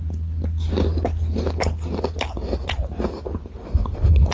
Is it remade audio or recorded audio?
recorded